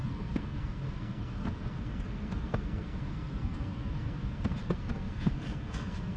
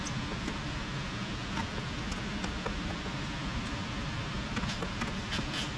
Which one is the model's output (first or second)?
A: first